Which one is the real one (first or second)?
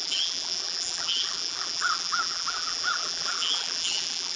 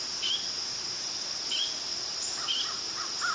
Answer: second